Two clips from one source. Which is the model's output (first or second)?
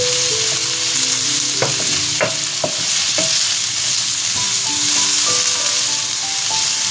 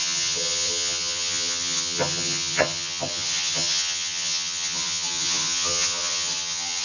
second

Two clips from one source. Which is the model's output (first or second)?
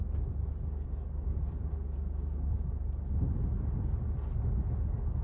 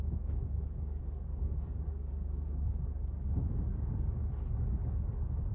second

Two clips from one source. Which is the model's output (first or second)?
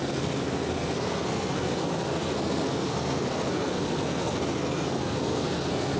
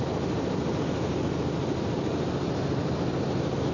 first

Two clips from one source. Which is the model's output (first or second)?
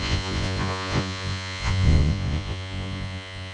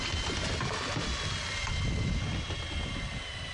first